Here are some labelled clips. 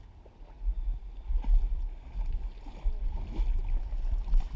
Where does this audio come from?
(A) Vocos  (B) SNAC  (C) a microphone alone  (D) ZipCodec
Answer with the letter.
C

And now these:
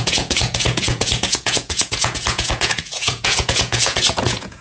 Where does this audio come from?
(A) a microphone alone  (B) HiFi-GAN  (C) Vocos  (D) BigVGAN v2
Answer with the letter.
C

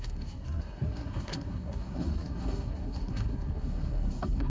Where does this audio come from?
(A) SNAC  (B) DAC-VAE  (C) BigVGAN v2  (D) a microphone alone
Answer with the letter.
A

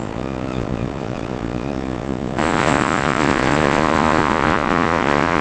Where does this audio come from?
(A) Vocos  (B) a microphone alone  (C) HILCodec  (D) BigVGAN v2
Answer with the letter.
A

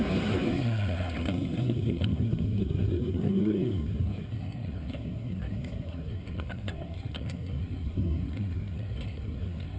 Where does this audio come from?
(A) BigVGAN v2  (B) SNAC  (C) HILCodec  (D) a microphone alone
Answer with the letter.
B